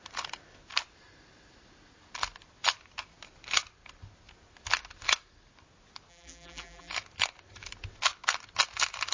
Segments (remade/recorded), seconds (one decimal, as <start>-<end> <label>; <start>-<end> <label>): 0.0-6.1 recorded; 6.1-6.9 remade; 6.9-9.1 recorded